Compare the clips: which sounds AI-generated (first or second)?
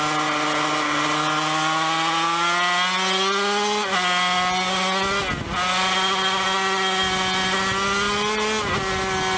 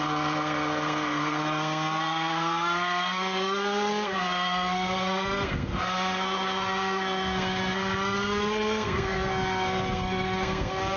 second